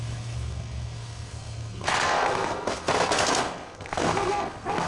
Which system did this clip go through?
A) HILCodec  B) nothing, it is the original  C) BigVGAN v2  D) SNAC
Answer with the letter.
D